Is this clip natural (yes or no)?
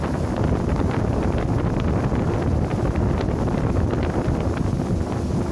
yes